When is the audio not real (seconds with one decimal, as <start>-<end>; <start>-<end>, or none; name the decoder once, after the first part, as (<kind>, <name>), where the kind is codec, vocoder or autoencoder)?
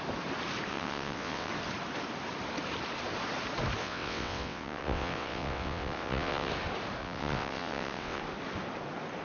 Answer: 0.7-1.5 (vocoder, WaveNeXt); 3.8-6.5; 7.0-8.2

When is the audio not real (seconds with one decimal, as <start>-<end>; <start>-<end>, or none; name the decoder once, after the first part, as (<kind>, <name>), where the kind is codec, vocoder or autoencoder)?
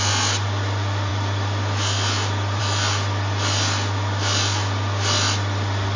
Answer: none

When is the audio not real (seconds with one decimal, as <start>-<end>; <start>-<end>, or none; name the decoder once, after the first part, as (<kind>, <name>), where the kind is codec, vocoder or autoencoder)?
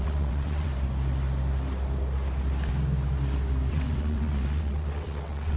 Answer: 0.0-0.7 (vocoder, WaveNeXt); 3.7-5.6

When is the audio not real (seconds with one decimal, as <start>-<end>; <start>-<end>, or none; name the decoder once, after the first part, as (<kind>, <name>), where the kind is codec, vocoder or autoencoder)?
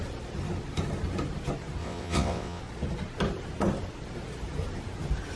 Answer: 1.8-2.6 (vocoder, WaveNeXt)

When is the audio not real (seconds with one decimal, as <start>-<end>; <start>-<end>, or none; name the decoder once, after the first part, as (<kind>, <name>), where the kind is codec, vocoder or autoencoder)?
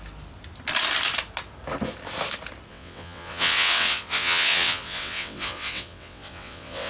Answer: 2.7-6.9 (vocoder, WaveNeXt)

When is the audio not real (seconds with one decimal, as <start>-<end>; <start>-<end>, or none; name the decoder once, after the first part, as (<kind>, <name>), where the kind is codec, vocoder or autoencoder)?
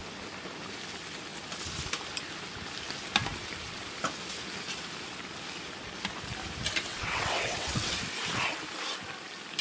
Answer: 6.9-8.0 (vocoder, WaveNeXt)